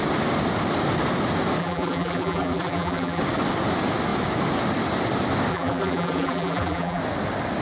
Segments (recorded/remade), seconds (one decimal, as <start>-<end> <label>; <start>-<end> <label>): 0.0-1.6 recorded; 1.6-3.2 remade; 3.2-5.5 recorded; 5.5-7.0 remade; 7.0-7.6 recorded